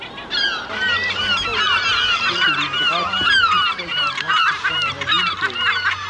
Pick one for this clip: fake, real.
real